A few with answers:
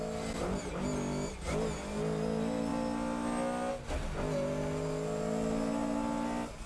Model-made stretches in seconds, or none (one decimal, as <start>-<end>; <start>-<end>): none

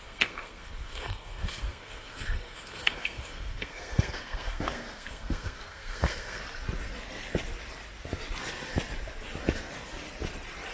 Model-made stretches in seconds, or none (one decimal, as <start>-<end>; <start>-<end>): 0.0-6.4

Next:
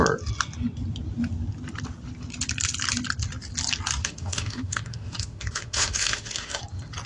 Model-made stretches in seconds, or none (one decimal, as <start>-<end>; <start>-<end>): 4.0-6.6

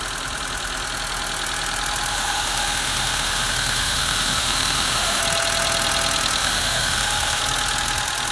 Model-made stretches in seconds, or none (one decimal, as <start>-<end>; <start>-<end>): 2.1-5.2; 6.4-7.4

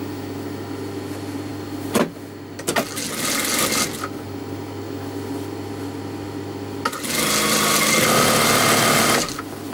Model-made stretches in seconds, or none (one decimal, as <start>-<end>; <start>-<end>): none

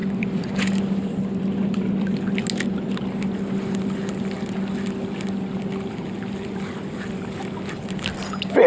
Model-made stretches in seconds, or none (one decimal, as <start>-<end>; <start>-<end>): none

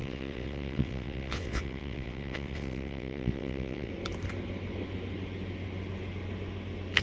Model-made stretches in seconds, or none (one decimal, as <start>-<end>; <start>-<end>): 0.0-3.9

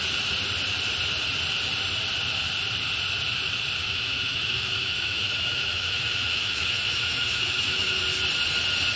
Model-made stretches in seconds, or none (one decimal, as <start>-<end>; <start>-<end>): 3.8-8.0